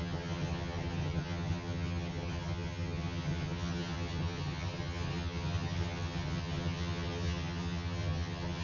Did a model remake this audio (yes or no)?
yes